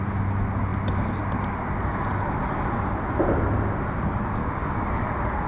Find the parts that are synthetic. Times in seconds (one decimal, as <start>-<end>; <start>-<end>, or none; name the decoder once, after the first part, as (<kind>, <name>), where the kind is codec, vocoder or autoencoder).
4.4-4.9 (codec, DAC)